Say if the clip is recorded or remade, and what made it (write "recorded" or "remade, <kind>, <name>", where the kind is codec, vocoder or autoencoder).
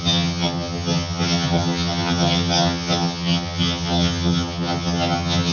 remade, vocoder, HiFi-GAN